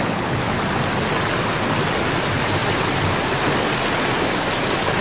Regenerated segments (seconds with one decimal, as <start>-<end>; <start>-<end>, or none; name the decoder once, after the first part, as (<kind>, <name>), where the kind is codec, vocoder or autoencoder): 0.0-0.6 (codec, HILCodec)